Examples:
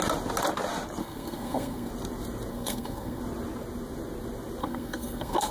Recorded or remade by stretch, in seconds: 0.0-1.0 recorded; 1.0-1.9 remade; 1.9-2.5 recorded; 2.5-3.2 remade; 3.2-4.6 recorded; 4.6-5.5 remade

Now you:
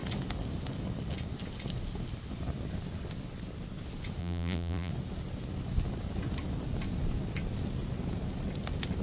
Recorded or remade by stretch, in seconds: 0.0-4.2 recorded; 4.2-4.9 remade; 4.9-9.0 recorded